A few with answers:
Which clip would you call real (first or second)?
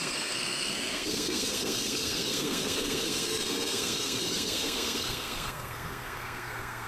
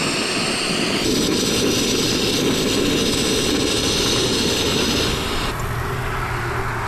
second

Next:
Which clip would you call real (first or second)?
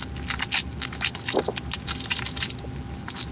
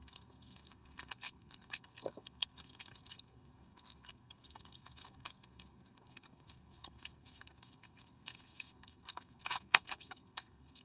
first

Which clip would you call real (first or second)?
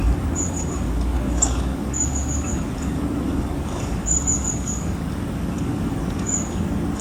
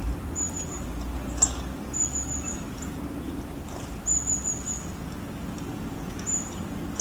second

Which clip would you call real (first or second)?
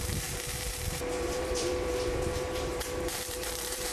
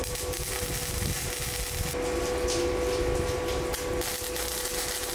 second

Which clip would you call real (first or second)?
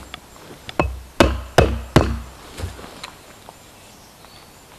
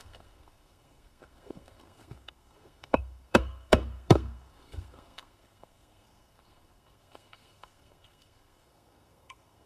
first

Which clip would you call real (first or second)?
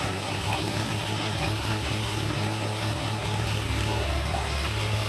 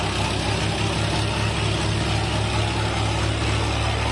second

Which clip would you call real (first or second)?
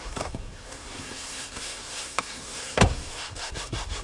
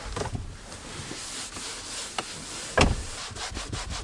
second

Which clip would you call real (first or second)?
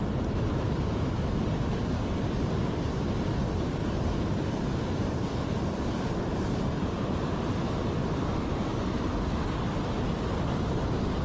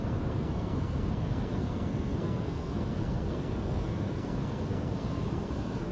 first